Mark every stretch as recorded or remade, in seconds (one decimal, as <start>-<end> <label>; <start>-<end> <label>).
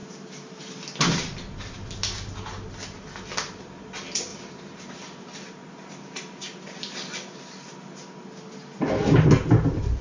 0.0-0.7 remade; 0.7-4.3 recorded; 4.3-4.9 remade; 4.9-10.0 recorded